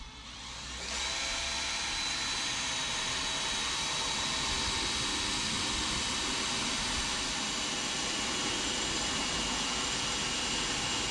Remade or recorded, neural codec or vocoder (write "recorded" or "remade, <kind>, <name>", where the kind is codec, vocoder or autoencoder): recorded